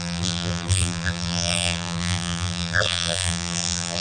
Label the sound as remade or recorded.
remade